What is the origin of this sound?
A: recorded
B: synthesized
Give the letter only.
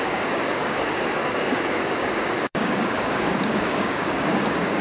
B